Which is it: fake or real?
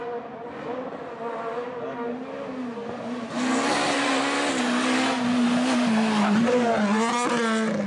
real